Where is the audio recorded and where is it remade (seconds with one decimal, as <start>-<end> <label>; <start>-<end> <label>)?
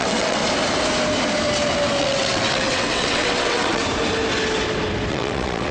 0.0-0.4 remade; 0.4-2.0 recorded; 2.0-3.8 remade; 3.8-5.1 recorded; 5.1-5.7 remade